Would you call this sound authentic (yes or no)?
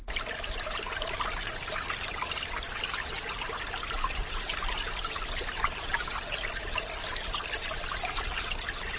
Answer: yes